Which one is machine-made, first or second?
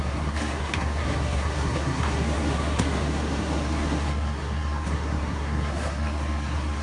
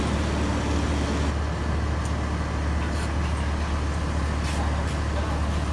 first